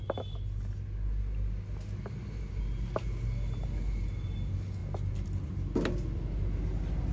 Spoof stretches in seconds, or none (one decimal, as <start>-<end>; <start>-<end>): none